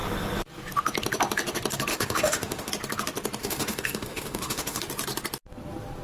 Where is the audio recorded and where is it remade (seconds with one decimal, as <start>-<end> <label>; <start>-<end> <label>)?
0.0-1.9 recorded; 1.9-2.7 remade; 2.7-3.4 recorded; 3.4-4.8 remade; 4.8-6.0 recorded